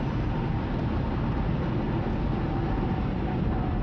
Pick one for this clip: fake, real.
real